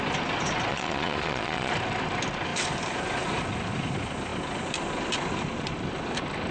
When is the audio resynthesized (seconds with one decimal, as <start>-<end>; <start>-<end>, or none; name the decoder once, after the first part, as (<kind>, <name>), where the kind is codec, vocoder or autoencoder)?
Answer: 0.7-1.7 (vocoder, Vocos)